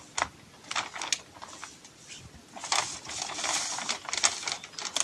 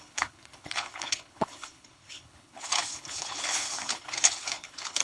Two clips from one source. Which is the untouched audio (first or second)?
first